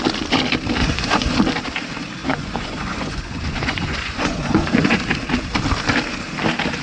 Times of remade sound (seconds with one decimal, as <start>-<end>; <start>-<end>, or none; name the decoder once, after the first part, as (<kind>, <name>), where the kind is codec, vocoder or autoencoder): 0.8-1.4 (vocoder, Vocos); 2.2-4.7